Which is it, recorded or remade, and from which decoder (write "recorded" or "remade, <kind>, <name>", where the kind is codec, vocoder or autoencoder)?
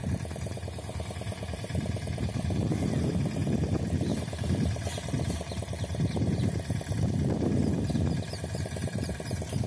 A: remade, vocoder, BigVGAN v2